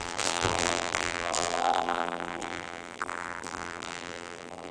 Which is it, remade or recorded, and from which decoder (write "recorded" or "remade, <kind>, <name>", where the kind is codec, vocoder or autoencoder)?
remade, vocoder, BigVGAN v2